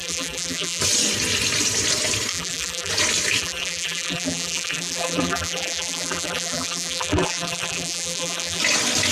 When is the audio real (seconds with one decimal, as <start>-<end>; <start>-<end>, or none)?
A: 0.8-2.3; 2.9-3.4; 8.6-9.1

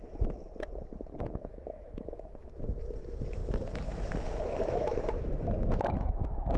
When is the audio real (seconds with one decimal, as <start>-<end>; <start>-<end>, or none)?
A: 0.4-1.4

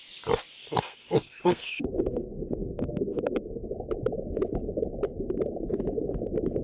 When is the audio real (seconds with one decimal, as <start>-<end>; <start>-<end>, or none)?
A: 0.0-0.6; 3.7-6.6

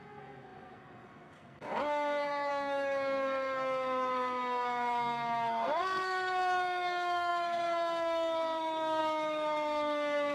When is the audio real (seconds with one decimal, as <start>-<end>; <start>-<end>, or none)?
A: none